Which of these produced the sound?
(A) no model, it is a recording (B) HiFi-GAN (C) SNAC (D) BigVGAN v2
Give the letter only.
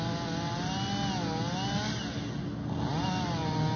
A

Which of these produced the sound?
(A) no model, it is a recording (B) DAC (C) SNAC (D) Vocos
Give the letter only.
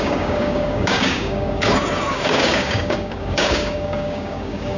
B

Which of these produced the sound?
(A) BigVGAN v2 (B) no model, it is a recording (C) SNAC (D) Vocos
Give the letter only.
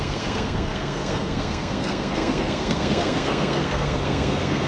C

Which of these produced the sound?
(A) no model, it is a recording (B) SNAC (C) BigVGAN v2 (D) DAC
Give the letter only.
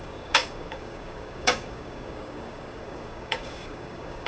D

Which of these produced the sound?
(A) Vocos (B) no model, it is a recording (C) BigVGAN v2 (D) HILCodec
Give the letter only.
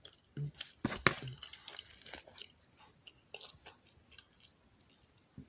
B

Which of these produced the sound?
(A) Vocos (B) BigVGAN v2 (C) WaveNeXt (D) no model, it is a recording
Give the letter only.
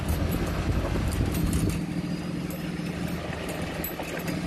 D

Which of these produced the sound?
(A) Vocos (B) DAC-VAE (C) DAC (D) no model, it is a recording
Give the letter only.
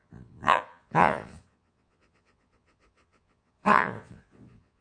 A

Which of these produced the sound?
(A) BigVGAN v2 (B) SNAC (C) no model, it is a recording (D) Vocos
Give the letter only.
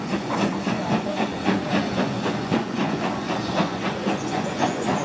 D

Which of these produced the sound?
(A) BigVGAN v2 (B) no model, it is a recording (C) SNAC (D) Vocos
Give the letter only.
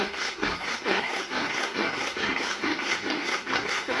C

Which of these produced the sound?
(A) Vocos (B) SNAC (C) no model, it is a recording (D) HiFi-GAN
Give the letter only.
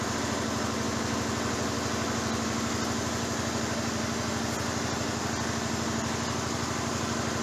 C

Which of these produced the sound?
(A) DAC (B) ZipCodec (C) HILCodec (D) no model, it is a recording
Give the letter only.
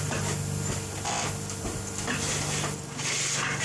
D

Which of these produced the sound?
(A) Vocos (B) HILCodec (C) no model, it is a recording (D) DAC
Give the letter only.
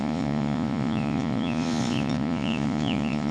A